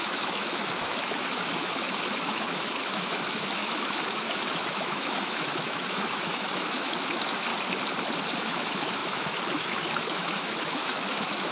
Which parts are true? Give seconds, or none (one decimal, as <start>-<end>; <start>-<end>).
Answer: 7.5-8.4